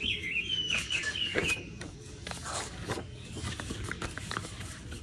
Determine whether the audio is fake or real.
fake